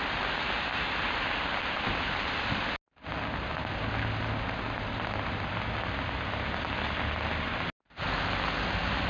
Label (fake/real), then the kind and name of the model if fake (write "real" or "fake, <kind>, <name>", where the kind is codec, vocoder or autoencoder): real